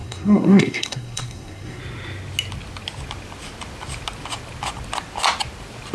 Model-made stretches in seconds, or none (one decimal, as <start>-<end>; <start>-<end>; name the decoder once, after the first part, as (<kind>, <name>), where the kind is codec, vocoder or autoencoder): 0.0-1.8 (codec, SNAC)